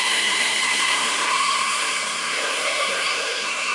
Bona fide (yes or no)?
no